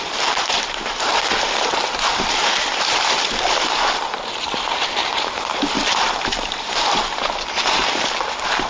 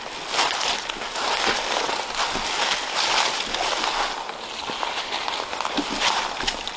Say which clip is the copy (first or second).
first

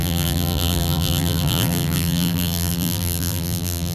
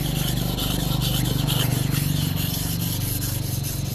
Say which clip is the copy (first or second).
first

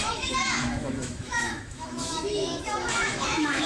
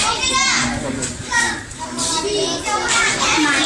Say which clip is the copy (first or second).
first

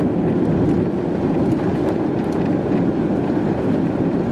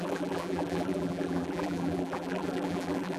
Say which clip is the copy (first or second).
second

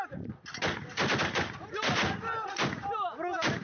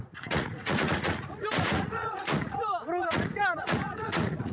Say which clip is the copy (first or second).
second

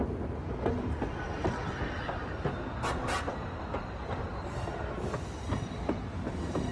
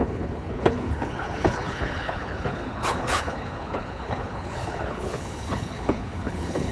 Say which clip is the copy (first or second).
second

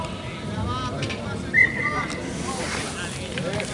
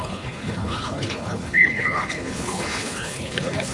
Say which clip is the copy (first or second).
second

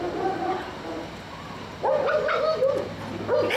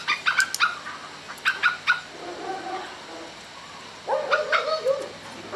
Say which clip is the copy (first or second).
first